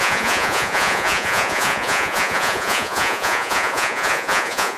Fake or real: fake